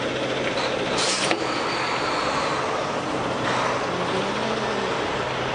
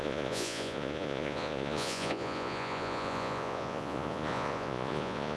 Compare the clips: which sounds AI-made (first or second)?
second